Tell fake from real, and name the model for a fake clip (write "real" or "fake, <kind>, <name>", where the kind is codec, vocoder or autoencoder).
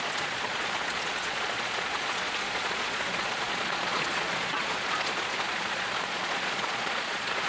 fake, vocoder, Vocos